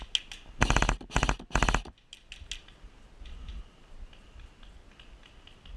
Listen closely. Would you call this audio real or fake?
real